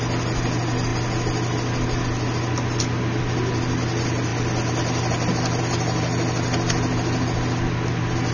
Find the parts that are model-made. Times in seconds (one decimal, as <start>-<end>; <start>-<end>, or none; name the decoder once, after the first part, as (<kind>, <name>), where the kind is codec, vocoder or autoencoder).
none